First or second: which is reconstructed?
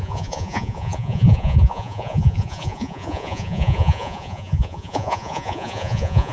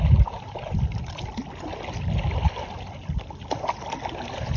first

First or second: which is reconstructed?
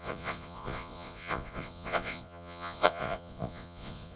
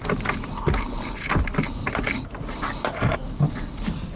first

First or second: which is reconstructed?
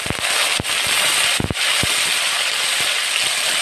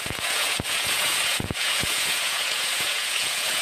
second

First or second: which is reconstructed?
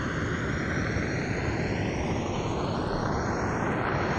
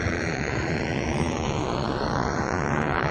second